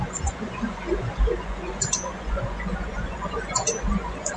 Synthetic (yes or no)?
yes